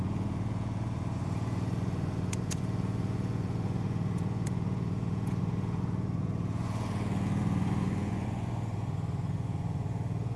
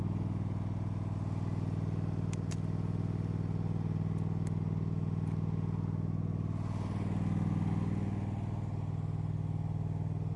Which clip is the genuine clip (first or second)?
second